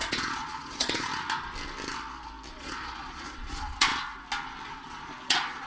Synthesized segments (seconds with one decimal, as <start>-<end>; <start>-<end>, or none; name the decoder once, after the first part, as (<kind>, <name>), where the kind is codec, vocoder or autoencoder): 0.0-1.1 (vocoder, Vocos); 2.5-3.9; 4.7-5.7